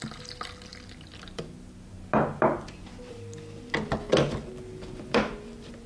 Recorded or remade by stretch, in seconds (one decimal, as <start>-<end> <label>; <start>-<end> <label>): 0.0-5.9 recorded